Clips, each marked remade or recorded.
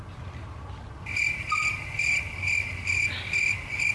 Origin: recorded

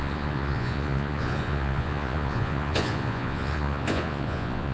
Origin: remade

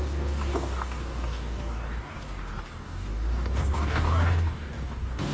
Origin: remade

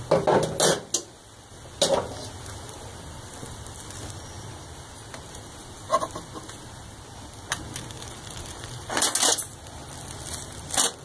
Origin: recorded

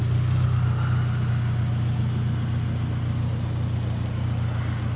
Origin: recorded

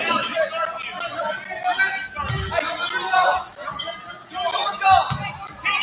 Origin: recorded